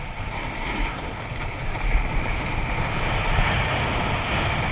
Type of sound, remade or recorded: recorded